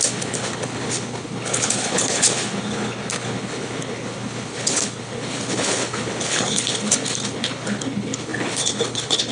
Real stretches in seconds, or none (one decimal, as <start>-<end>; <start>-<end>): none